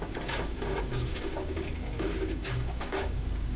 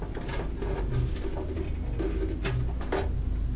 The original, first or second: second